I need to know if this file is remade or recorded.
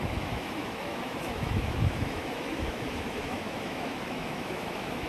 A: remade